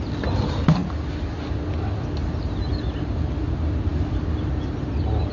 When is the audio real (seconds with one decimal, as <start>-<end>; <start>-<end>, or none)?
0.0-5.3